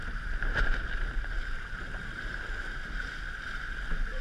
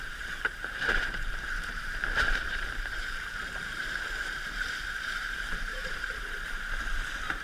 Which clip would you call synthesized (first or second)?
second